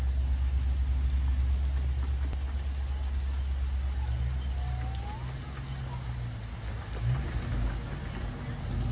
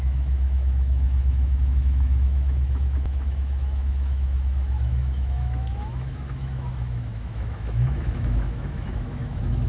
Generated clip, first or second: second